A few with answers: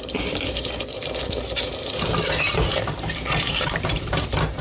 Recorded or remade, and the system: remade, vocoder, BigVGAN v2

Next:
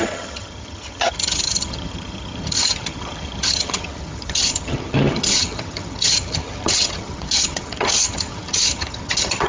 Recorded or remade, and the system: remade, vocoder, HiFi-GAN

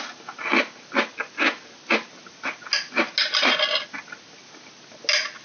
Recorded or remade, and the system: recorded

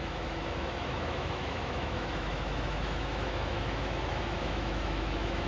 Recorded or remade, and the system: remade, autoencoder, DAC-VAE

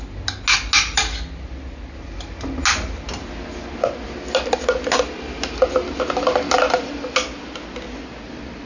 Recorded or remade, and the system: recorded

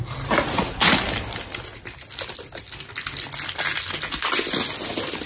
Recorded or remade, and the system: recorded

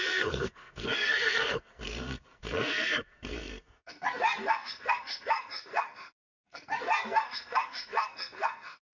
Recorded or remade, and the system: remade, codec, SNAC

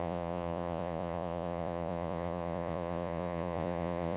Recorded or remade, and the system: remade, vocoder, Vocos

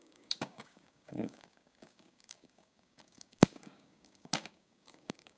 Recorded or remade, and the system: remade, codec, DAC